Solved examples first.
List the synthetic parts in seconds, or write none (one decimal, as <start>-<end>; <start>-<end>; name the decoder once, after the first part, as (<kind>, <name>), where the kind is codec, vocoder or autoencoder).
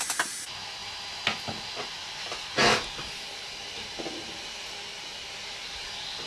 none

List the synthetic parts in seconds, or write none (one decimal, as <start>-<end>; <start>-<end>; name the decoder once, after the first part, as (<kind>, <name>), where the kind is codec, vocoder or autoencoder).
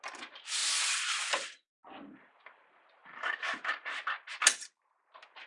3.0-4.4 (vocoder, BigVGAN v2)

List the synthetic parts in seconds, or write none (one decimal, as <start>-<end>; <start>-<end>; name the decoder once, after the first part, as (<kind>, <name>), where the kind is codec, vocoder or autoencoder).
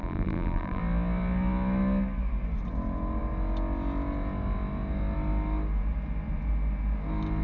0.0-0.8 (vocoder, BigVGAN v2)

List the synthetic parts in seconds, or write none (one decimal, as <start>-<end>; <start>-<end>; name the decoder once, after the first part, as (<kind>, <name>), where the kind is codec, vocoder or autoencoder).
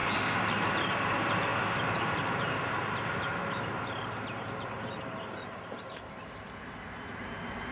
0.6-3.4 (vocoder, BigVGAN v2); 5.2-7.7